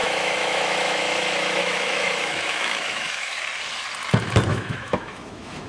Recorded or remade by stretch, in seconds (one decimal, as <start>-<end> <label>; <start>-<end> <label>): 0.0-3.4 remade; 3.4-4.5 recorded; 4.5-5.7 remade